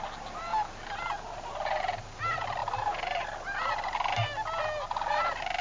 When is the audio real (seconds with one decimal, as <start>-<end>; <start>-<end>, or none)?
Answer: 0.0-5.6